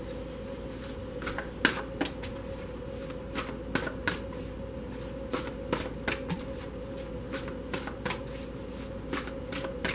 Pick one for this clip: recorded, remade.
recorded